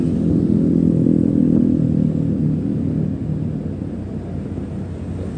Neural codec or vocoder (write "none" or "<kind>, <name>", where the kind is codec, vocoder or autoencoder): none